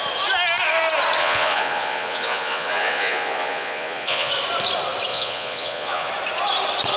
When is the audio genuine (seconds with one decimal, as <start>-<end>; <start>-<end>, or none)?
0.0-1.2; 4.3-5.1; 6.1-7.0